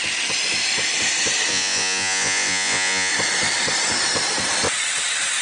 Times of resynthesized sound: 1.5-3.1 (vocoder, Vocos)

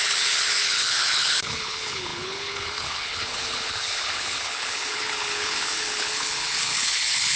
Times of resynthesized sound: 0.0-7.4 (codec, HILCodec)